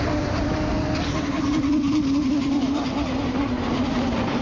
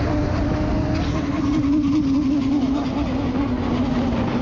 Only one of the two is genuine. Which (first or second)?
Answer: second